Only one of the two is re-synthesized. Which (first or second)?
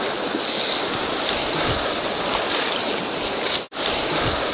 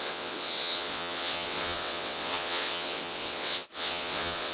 second